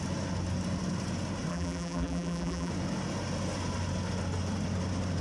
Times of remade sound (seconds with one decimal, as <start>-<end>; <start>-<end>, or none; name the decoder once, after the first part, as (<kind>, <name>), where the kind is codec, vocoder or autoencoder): 1.5-2.7 (vocoder, BigVGAN v2)

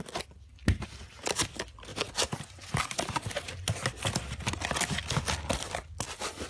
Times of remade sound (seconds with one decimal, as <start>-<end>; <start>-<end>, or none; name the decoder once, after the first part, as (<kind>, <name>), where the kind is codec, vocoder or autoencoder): none